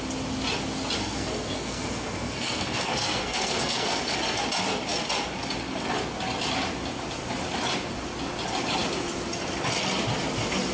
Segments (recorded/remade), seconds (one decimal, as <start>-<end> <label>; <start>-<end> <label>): 0.0-1.0 recorded; 1.0-4.0 remade; 4.0-10.7 recorded